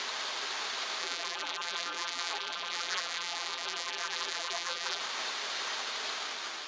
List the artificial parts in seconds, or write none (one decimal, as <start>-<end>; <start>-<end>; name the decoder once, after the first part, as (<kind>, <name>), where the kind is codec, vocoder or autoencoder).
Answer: 1.0-5.0 (vocoder, BigVGAN v2)